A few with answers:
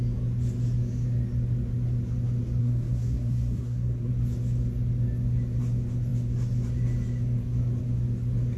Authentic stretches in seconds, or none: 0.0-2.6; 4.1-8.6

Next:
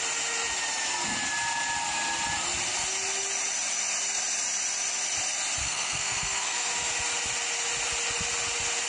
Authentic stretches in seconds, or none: 0.0-5.6; 6.7-8.9